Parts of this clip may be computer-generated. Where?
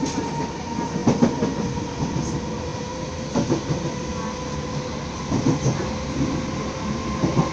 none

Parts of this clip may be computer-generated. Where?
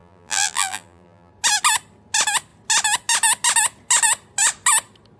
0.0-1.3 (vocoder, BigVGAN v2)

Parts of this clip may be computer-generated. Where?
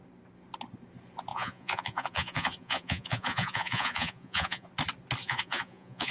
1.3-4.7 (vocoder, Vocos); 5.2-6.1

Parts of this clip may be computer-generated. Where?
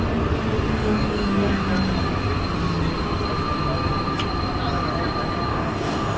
0.7-1.7 (codec, DAC); 5.5-6.2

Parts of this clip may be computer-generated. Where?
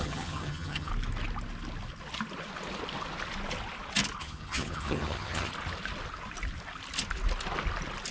0.0-0.9 (vocoder, HiFi-GAN); 4.2-5.5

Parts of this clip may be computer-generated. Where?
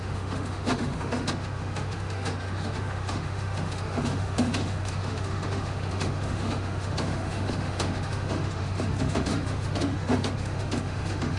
0.0-11.4 (autoencoder, DAC-VAE)